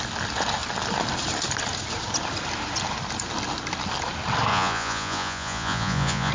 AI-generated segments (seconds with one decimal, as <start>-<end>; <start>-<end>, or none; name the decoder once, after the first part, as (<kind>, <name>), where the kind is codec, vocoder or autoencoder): 4.5-6.3 (vocoder, Vocos)